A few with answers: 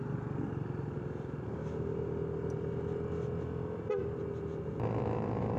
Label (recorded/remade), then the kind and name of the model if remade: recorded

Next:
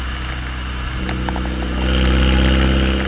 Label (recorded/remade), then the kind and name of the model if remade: recorded